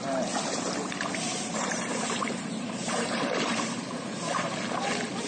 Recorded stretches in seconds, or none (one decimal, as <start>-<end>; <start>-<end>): 0.0-1.3; 4.5-5.3